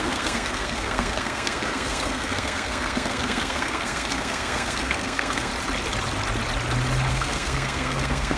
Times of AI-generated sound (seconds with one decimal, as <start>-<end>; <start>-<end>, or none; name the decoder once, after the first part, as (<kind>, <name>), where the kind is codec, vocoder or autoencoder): 0.0-5.5 (codec, SNAC); 7.1-8.4